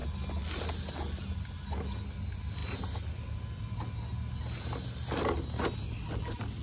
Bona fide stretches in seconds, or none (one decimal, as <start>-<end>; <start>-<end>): 0.0-6.6